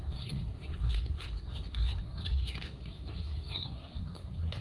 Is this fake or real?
fake